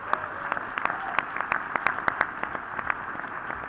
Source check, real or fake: real